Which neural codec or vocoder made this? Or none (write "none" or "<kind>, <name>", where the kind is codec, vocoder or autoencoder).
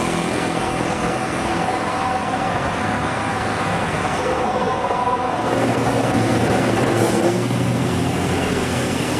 codec, SNAC